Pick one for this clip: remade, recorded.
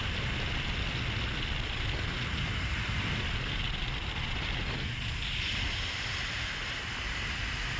recorded